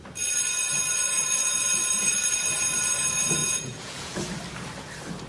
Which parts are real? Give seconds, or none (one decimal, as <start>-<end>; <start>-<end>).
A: 0.0-3.4; 4.2-5.3